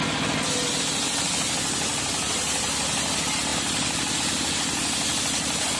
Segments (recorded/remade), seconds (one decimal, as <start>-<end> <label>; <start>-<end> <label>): 0.0-5.8 recorded